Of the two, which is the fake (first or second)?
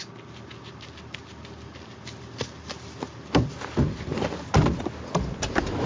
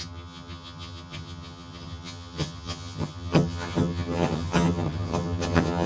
second